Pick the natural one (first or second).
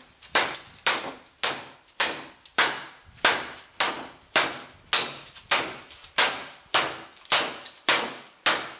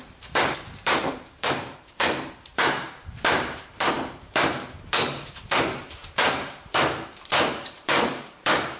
first